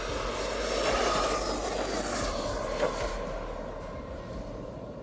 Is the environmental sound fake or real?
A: real